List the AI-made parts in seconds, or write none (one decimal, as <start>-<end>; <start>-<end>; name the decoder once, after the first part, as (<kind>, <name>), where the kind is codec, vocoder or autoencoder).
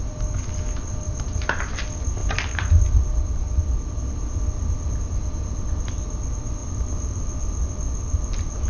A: none